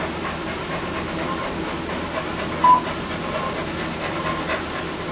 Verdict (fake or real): real